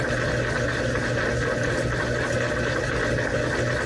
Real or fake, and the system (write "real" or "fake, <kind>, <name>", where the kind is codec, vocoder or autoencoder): real